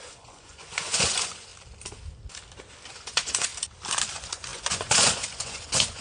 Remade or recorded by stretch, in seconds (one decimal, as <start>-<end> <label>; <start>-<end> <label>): 0.0-1.5 remade; 1.5-2.9 recorded; 2.9-3.5 remade; 3.5-4.1 recorded; 4.1-6.0 remade